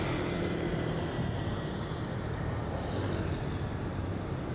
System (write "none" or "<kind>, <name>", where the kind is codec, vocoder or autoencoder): none